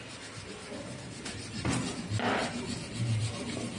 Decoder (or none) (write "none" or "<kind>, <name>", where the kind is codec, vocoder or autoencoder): none